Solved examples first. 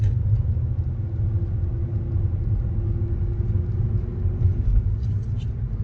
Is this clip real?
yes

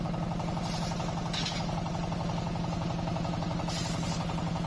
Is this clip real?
yes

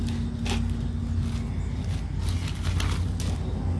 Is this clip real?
yes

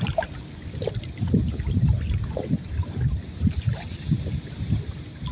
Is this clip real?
yes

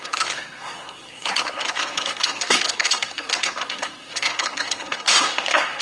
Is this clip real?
no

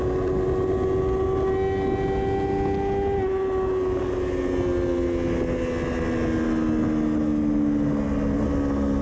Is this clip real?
yes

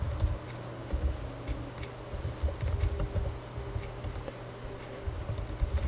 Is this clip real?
yes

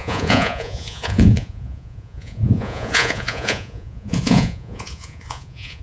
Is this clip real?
no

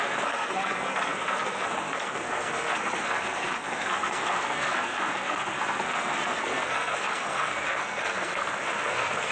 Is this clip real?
no